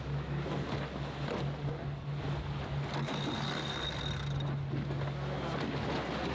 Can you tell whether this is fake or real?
real